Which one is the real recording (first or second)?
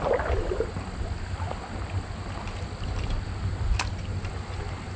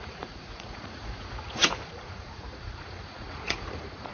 first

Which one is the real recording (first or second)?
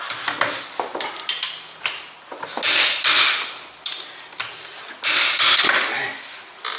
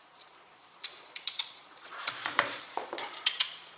first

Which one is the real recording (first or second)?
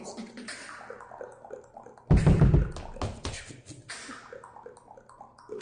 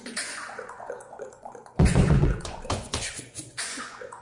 first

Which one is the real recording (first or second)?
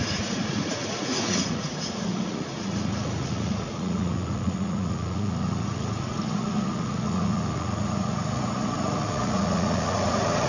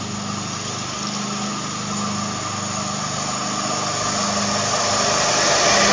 second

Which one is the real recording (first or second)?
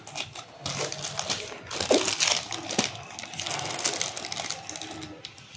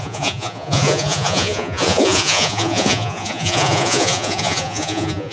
first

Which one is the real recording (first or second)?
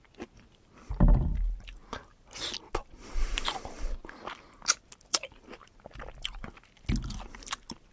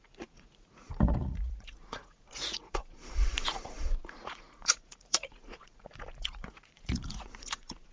first